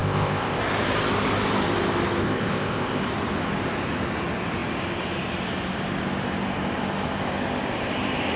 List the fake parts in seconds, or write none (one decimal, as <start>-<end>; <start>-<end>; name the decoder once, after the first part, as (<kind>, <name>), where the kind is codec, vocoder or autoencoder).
0.0-0.6 (codec, ZipCodec); 2.2-3.0